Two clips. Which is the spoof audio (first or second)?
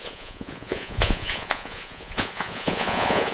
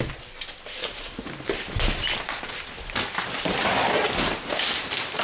first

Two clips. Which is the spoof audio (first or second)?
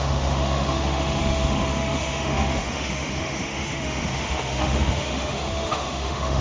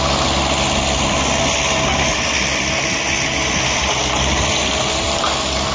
first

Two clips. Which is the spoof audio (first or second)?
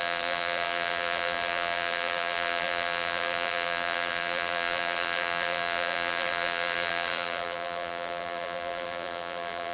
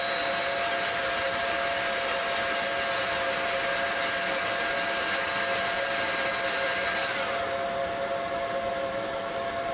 first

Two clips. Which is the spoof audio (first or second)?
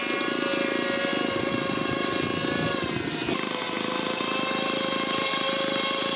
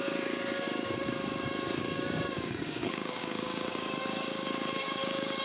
second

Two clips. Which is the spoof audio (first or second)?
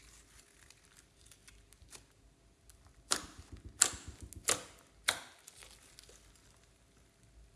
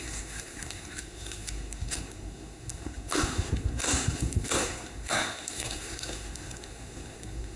second